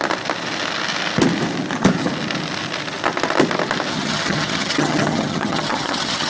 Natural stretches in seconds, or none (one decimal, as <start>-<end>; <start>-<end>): 0.0-3.9